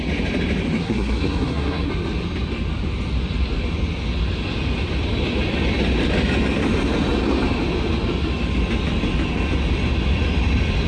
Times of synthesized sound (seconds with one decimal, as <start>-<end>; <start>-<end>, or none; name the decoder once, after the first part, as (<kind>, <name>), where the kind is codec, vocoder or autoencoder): 0.8-1.9 (codec, SNAC)